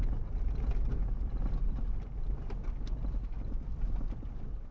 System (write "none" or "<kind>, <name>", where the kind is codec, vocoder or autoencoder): none